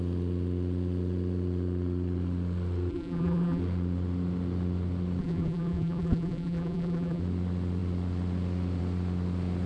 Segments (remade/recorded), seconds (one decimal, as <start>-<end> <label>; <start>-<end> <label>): 0.0-2.9 recorded; 2.9-3.6 remade; 3.6-5.2 recorded; 5.2-7.2 remade; 7.2-9.7 recorded